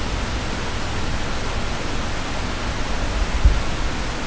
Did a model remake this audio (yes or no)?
no